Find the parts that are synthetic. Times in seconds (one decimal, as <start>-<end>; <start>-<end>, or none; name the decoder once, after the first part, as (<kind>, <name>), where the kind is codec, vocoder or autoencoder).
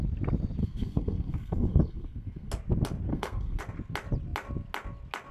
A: 0.6-2.5 (codec, SNAC); 3.1-3.6